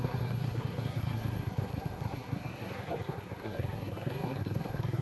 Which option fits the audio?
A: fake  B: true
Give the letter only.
A